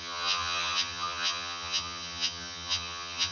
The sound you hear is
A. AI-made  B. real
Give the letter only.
A